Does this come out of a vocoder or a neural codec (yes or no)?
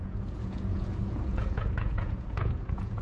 yes